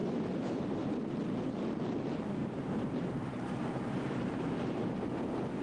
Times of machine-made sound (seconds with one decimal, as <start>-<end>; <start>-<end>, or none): 0.0-1.1; 2.4-4.3